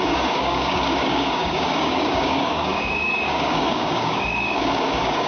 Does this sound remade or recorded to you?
remade